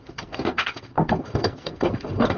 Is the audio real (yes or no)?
no